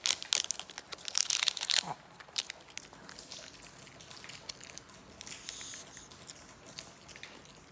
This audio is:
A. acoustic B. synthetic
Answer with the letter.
A